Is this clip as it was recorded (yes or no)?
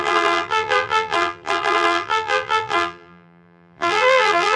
no